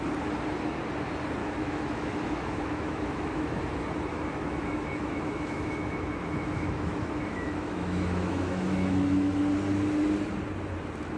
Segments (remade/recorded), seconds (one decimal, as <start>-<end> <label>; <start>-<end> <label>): 0.0-1.4 recorded; 1.4-3.6 remade; 3.6-4.1 recorded; 4.1-9.3 remade; 9.3-11.2 recorded